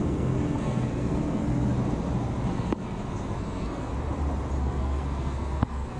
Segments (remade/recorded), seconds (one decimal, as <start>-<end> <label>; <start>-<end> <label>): 0.0-1.7 remade; 1.7-2.5 recorded; 2.5-3.9 remade; 3.9-4.6 recorded; 4.6-6.0 remade